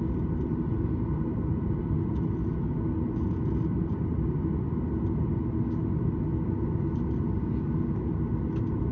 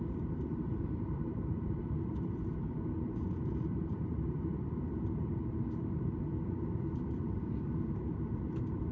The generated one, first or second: second